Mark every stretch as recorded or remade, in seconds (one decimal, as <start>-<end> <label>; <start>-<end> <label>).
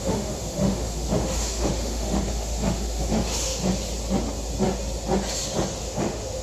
0.0-3.6 remade; 3.6-5.8 recorded; 5.8-6.4 remade